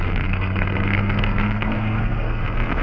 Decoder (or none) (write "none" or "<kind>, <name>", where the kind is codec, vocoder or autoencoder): codec, SNAC